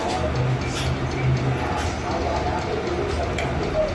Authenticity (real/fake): real